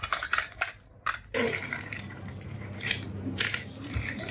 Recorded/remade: remade